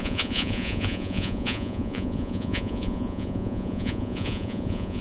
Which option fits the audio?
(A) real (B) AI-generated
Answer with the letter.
B